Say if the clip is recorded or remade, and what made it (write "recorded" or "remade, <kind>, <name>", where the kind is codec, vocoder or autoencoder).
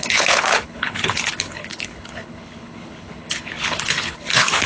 remade, codec, HILCodec